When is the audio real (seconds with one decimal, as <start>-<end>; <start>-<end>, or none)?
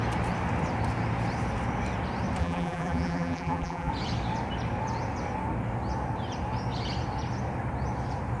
0.0-2.4; 3.9-8.4